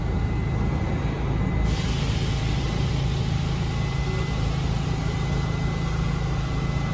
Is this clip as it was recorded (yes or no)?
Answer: yes